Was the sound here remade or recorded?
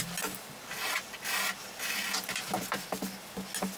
recorded